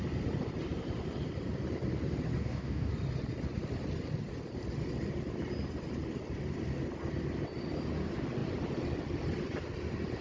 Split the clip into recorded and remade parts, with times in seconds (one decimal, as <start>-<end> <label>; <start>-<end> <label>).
0.0-2.4 recorded; 2.4-2.9 remade; 2.9-10.2 recorded